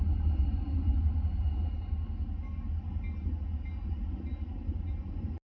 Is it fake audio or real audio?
real